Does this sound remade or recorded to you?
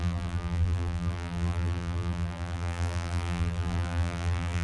remade